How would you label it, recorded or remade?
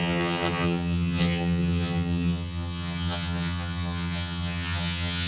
remade